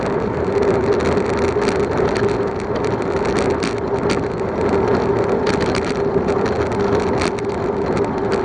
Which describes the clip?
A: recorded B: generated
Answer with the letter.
A